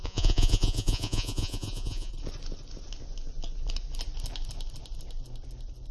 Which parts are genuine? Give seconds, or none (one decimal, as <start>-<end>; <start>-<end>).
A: 2.1-5.9